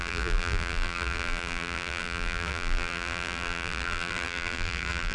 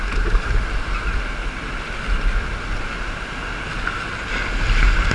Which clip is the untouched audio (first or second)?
second